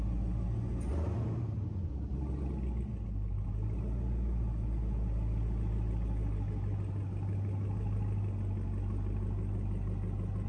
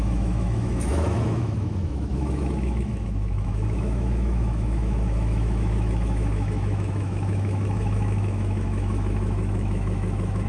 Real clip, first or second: first